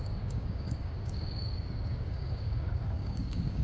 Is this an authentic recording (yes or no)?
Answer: no